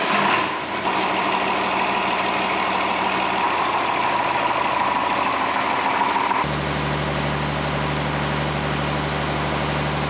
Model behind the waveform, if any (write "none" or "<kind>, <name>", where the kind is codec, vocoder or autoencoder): none